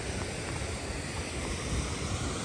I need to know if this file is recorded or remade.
recorded